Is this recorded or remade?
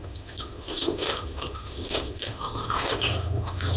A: remade